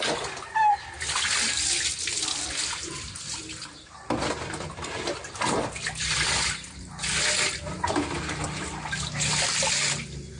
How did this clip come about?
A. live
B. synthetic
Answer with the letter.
A